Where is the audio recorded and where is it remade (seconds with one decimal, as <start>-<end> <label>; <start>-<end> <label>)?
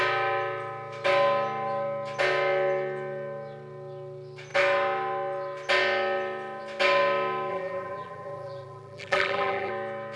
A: 0.0-7.5 recorded; 7.5-9.7 remade; 9.7-10.2 recorded